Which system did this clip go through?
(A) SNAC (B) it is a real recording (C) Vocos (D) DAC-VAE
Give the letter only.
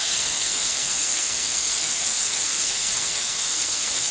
A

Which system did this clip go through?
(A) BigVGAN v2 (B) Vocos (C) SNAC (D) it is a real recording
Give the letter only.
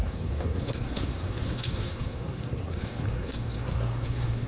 C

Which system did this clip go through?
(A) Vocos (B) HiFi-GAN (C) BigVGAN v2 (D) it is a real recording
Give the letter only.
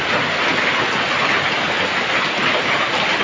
D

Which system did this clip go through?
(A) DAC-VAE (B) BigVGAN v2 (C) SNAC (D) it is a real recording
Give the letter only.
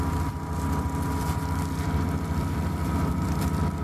B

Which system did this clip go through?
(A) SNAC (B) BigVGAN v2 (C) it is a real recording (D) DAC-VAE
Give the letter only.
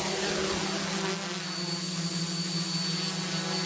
C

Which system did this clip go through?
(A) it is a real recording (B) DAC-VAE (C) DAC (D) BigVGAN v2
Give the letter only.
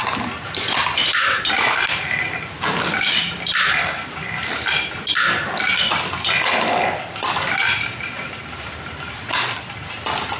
A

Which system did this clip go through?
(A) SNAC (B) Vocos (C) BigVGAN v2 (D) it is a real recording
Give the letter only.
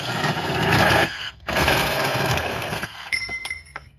A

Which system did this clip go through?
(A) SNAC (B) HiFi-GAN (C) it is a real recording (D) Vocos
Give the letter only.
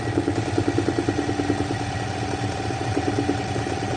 C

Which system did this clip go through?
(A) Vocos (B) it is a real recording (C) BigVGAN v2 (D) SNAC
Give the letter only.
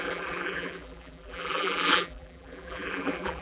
C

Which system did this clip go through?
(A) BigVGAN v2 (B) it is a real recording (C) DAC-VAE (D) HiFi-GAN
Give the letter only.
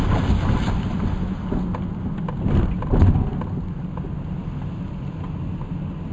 B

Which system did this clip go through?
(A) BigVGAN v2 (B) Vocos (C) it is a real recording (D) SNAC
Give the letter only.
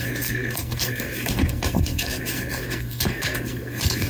D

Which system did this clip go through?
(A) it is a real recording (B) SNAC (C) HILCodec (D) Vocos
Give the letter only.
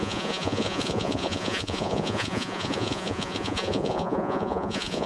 D